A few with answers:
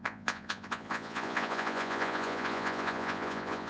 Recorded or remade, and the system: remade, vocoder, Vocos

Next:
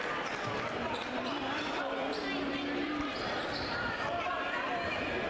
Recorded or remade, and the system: remade, vocoder, BigVGAN v2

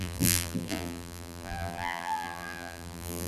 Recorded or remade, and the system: remade, vocoder, BigVGAN v2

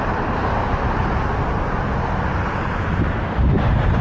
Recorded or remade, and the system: recorded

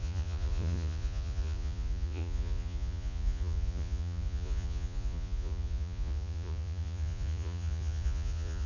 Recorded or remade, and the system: remade, vocoder, Vocos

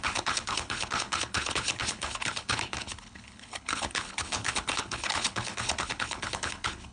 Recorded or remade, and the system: remade, codec, HILCodec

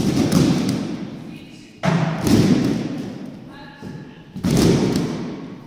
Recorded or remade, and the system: recorded